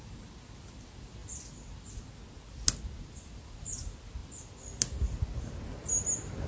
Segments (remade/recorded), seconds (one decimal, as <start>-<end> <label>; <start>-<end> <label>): 0.0-6.5 recorded